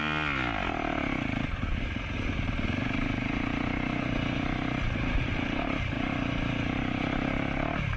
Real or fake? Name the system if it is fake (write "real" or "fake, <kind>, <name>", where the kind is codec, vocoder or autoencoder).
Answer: real